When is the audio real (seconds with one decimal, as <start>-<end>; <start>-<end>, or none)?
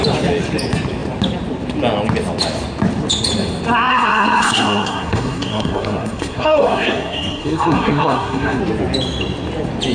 0.0-3.9; 8.6-9.9